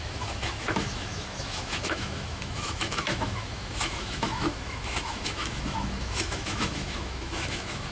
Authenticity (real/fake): fake